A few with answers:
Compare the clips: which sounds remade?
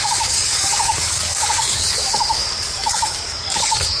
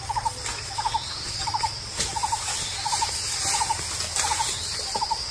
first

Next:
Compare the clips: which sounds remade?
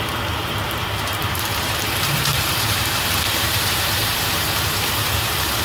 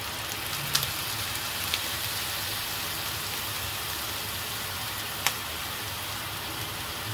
first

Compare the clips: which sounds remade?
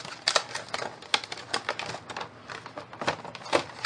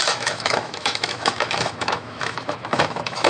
second